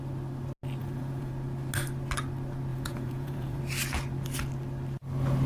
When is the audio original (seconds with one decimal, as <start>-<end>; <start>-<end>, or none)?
0.0-0.8; 1.3-2.7; 3.6-5.5